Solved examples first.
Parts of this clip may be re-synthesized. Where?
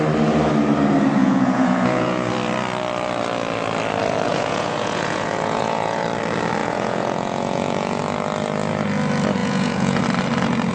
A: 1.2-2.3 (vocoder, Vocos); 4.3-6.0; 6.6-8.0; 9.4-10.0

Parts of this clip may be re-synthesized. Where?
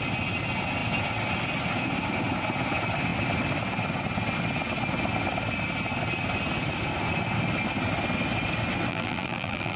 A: 8.9-9.8 (vocoder, BigVGAN v2)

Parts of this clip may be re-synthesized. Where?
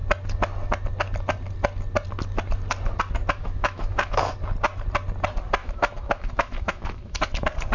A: 3.4-4.3 (autoencoder, DAC-VAE); 5.6-7.2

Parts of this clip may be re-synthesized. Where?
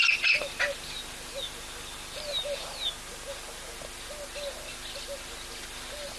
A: none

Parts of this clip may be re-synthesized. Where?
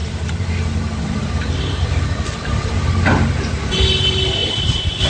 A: 0.0-2.8 (vocoder, BigVGAN v2)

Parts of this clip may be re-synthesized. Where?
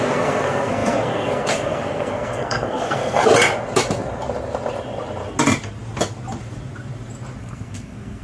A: 0.0-3.2 (codec, SNAC); 7.4-8.2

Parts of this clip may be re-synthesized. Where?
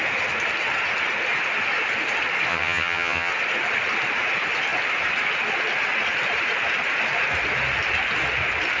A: 2.5-3.3 (vocoder, HiFi-GAN)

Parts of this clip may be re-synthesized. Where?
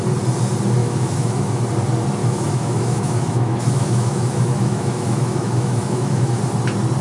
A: 0.8-1.6 (autoencoder, DAC-VAE); 2.2-6.4